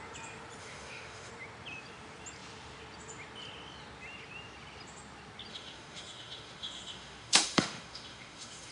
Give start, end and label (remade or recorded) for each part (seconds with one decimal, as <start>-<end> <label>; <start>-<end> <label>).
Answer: 0.0-0.6 recorded; 0.6-1.3 remade; 1.3-5.5 recorded; 5.5-8.7 remade